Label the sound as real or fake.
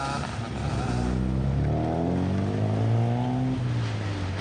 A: real